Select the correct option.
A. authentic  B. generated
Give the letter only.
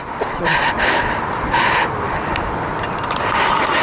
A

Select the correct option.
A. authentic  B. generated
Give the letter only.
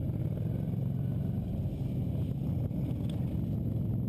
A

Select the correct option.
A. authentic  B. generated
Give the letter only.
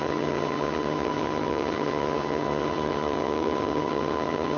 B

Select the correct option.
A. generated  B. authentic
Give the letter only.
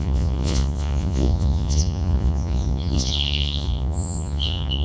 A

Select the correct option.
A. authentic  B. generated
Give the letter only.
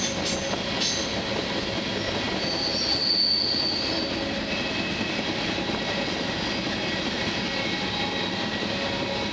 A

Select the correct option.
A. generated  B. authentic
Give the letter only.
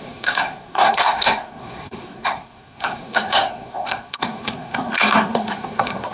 A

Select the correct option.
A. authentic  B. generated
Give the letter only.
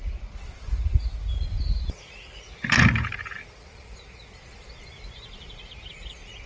A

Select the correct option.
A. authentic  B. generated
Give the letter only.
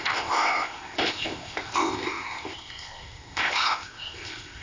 B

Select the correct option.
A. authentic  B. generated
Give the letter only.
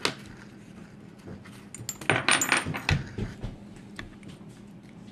A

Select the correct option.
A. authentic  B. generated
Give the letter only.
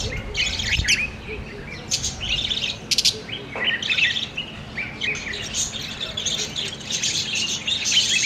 A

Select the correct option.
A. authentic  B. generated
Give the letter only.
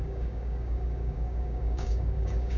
B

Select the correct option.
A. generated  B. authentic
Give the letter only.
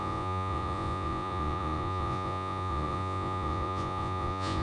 A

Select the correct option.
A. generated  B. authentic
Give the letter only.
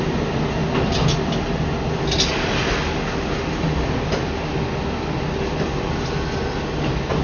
B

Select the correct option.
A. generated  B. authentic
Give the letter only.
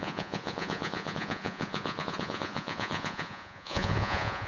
A